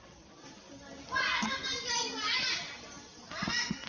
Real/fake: real